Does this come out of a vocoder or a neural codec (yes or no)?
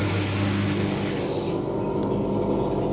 no